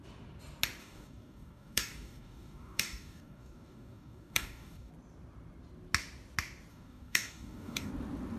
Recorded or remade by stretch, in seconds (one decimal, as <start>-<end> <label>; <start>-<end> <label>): 0.0-0.8 recorded; 0.8-4.9 remade; 4.9-6.7 recorded; 6.7-7.9 remade; 7.9-8.4 recorded